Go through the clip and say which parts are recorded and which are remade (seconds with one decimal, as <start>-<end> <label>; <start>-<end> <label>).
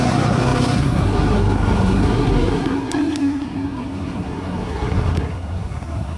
0.0-6.2 remade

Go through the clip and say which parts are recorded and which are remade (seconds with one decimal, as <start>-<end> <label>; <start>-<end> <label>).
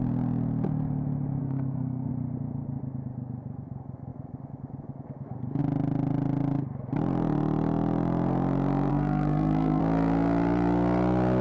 0.0-1.4 recorded; 1.4-2.1 remade; 2.1-8.9 recorded; 8.9-9.8 remade; 9.8-11.4 recorded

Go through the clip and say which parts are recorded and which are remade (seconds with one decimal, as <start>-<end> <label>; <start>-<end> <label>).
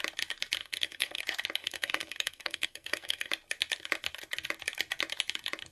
0.0-0.6 recorded; 0.6-1.2 remade; 1.2-1.6 recorded; 1.6-3.3 remade; 3.3-5.7 recorded